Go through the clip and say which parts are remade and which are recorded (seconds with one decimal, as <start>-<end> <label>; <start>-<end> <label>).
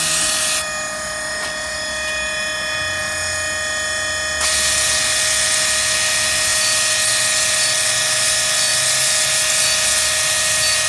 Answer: 0.0-10.9 recorded